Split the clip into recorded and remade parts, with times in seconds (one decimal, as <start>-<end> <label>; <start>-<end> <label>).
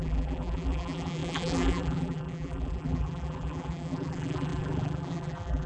0.0-5.7 remade